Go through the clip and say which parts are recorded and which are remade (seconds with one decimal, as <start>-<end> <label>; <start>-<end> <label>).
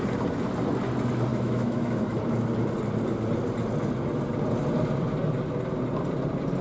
0.0-1.3 recorded; 1.3-2.2 remade; 2.2-6.6 recorded